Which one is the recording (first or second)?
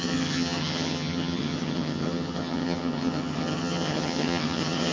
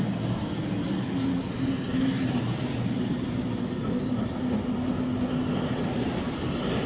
second